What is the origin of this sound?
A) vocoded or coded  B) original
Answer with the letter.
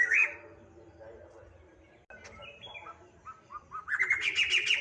B